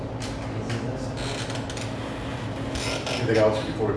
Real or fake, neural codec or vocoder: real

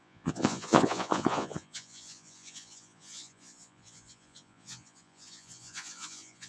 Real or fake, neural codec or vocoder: fake, vocoder, Vocos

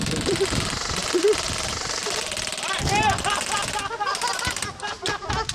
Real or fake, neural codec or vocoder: real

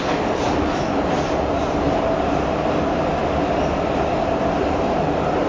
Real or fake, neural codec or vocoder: real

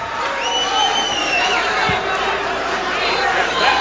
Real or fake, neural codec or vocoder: fake, vocoder, BigVGAN v2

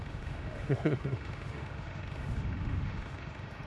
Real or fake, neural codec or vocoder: fake, autoencoder, DAC-VAE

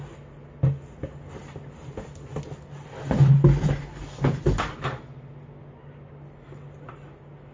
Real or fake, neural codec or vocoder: real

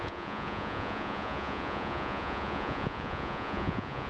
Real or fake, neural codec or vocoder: fake, vocoder, Vocos